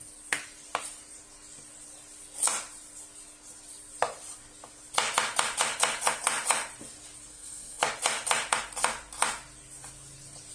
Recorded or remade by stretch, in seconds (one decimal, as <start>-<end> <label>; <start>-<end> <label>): 0.0-7.3 recorded; 7.3-7.8 remade; 7.8-10.5 recorded